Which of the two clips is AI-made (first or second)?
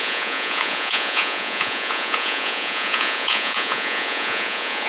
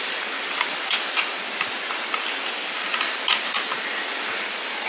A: first